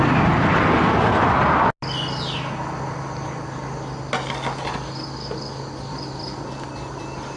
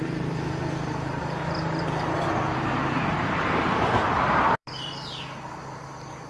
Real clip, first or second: first